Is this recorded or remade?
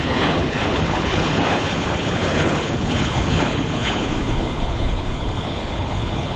remade